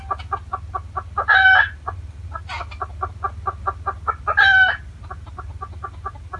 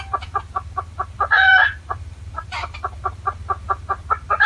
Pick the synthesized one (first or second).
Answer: second